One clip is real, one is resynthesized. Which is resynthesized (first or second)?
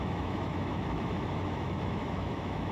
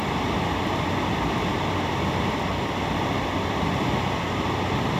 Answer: first